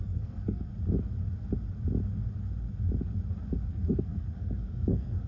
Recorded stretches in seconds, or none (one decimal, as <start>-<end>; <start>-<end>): 0.7-3.7